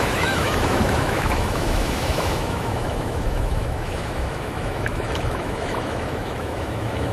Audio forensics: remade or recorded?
remade